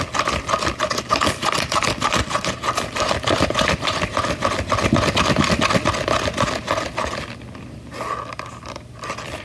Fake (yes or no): no